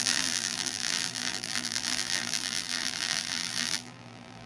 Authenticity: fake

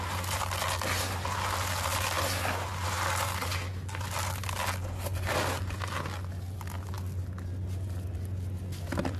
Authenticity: real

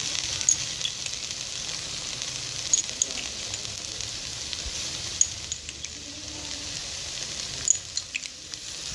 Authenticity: real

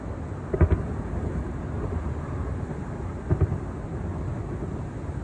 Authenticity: real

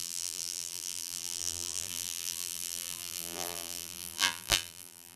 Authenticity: fake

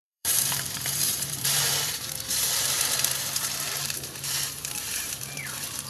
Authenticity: fake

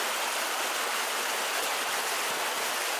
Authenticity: real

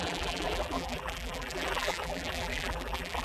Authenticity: fake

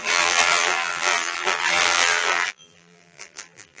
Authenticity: fake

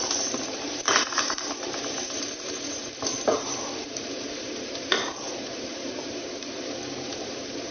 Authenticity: fake